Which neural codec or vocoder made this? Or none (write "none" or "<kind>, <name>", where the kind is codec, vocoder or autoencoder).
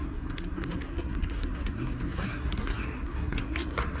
codec, SNAC